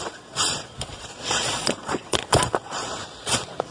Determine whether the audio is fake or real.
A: fake